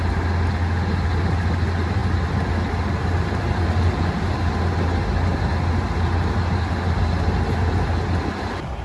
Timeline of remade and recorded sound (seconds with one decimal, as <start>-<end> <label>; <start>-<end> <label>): 0.0-8.8 recorded